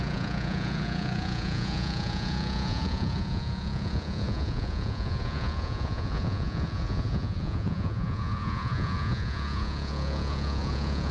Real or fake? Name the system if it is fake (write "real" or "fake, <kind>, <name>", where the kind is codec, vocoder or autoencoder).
fake, vocoder, Vocos